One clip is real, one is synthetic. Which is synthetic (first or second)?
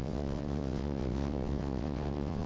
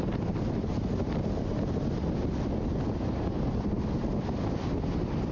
first